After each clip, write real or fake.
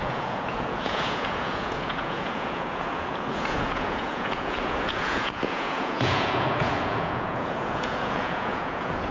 fake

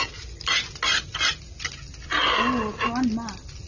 real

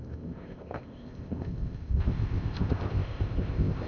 fake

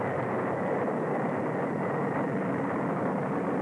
real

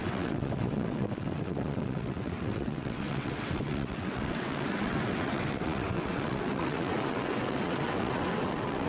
fake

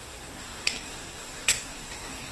fake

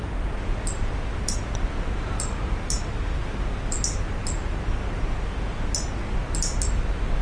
real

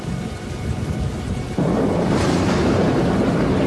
fake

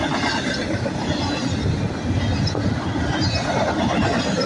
real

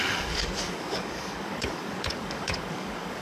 fake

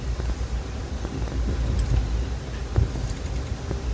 real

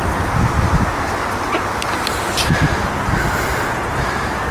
real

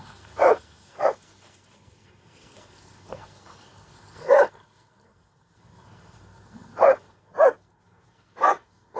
fake